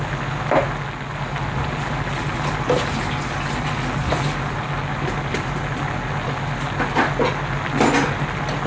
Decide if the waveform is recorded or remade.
recorded